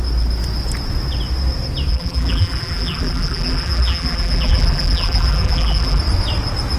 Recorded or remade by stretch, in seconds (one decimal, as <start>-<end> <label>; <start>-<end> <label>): 0.0-1.9 recorded; 1.9-6.0 remade; 6.0-6.8 recorded